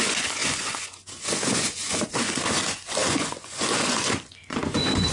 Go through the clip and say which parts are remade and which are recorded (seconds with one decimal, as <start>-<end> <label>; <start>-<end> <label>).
0.0-5.1 remade